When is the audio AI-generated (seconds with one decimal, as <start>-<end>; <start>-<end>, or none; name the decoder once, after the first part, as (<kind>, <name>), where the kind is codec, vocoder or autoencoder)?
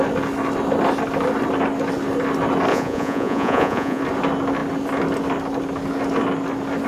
2.7-4.0 (vocoder, Vocos)